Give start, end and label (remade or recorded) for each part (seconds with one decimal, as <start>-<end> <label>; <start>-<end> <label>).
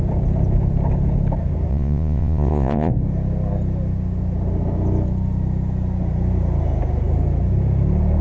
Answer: 0.0-1.7 recorded; 1.7-2.9 remade; 2.9-8.2 recorded